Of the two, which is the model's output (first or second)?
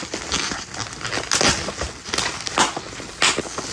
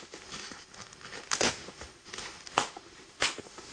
second